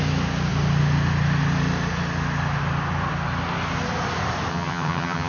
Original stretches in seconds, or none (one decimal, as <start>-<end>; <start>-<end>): 0.0-4.5